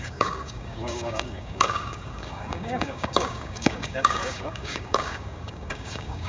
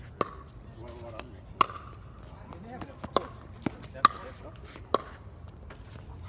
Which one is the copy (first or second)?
first